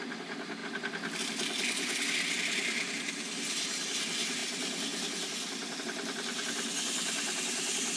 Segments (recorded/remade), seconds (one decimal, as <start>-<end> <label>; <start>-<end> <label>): 0.0-8.0 recorded